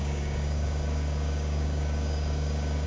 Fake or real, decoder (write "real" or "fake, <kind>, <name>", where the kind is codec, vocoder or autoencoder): fake, codec, DAC